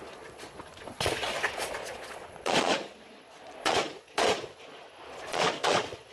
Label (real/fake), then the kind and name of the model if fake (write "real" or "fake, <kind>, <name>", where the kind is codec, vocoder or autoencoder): fake, vocoder, Vocos